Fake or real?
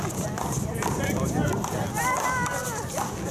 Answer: real